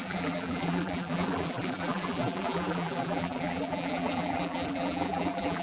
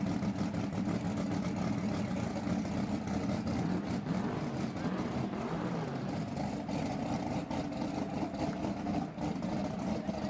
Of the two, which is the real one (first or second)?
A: second